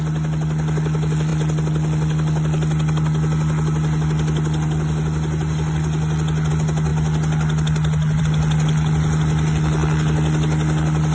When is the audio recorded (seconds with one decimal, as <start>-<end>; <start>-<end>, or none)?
0.0-11.1